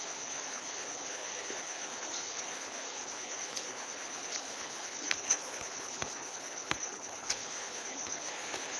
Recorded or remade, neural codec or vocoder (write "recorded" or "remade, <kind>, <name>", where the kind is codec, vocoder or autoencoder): remade, codec, HILCodec